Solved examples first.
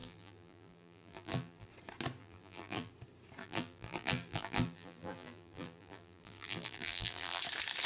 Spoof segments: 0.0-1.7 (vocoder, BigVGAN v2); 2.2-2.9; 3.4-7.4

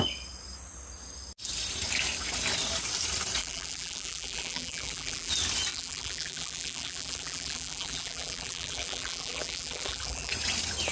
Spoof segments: 3.4-5.3 (vocoder, BigVGAN v2); 5.7-10.3

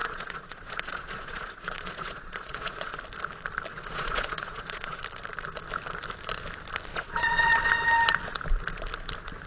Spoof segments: 0.0-3.0 (vocoder, Vocos); 3.7-5.0; 6.9-7.7

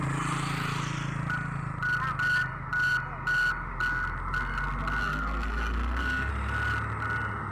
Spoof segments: 5.0-6.3 (codec, SNAC)

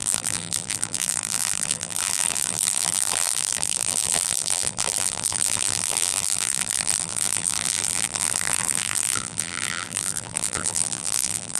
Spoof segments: 0.0-11.6 (vocoder, BigVGAN v2)

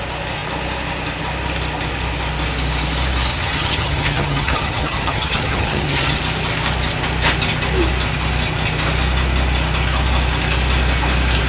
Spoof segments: 3.3-6.2 (vocoder, HiFi-GAN)